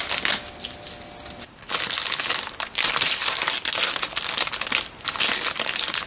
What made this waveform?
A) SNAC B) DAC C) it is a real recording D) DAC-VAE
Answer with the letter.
C